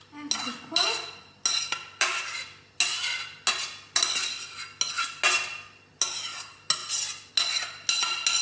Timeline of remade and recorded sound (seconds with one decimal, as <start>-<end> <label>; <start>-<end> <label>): 0.0-8.4 recorded